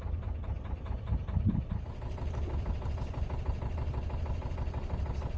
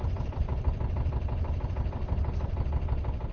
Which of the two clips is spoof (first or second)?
second